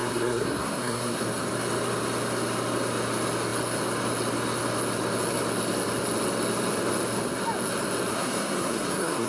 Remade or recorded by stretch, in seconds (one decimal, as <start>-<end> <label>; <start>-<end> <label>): 0.0-1.2 remade; 1.2-8.1 recorded; 8.1-9.3 remade